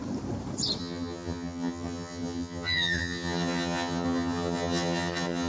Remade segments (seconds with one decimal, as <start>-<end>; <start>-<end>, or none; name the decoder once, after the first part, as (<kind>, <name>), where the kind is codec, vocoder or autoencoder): 0.8-5.5 (vocoder, HiFi-GAN)